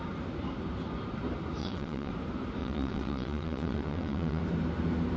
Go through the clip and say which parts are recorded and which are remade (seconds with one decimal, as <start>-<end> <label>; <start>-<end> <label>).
0.0-1.6 recorded; 1.6-2.1 remade; 2.1-2.6 recorded; 2.6-4.4 remade; 4.4-5.2 recorded